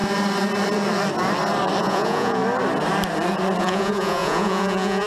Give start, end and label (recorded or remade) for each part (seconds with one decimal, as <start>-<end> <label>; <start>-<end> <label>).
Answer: 0.0-1.8 recorded; 1.8-2.4 remade; 2.4-3.6 recorded; 3.6-5.1 remade